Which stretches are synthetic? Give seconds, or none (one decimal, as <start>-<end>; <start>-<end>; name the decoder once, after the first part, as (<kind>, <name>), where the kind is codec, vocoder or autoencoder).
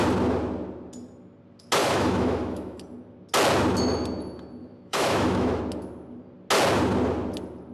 1.8-2.8 (autoencoder, DAC-VAE); 4.6-5.6